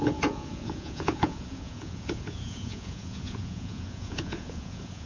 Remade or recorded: remade